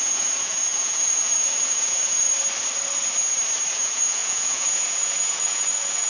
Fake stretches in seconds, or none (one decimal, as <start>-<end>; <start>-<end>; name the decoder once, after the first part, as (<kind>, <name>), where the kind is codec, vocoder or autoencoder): 0.0-2.3 (vocoder, Vocos); 3.7-6.1